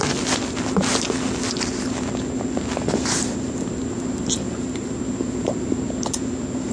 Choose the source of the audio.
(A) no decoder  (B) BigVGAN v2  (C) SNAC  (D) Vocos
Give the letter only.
A